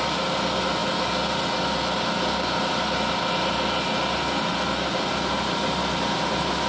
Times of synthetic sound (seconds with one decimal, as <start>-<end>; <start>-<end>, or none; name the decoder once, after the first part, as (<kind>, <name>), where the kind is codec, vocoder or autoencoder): none